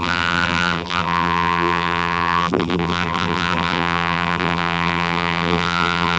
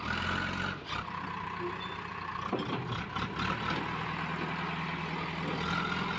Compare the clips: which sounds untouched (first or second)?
second